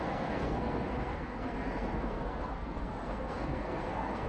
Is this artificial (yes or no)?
yes